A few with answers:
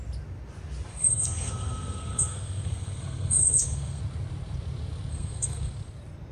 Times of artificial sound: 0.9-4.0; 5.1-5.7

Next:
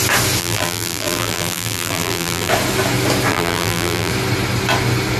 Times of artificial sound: 0.4-2.5; 3.3-4.1